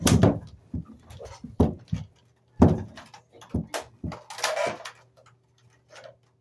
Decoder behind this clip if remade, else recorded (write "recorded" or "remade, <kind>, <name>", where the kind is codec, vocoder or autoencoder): recorded